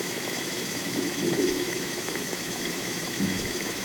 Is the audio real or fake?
fake